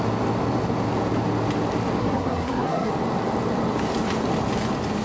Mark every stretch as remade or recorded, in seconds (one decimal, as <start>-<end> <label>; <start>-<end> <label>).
0.0-2.0 recorded; 2.0-2.9 remade; 2.9-5.0 recorded